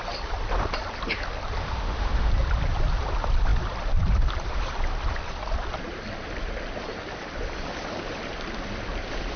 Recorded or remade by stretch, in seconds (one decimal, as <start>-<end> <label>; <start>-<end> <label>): 0.0-1.6 recorded; 1.6-2.3 remade; 2.3-9.4 recorded